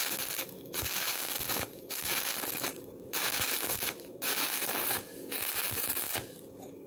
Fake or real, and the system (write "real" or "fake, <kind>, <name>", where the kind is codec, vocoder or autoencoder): fake, codec, DAC